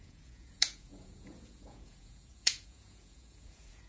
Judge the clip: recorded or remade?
remade